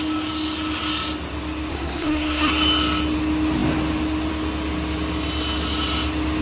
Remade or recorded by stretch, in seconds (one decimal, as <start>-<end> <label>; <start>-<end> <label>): 0.0-1.7 recorded; 1.7-2.5 remade; 2.5-6.4 recorded